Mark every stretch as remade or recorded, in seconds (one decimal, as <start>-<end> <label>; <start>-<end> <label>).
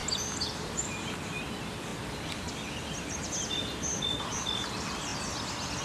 0.0-5.1 recorded; 5.1-5.8 remade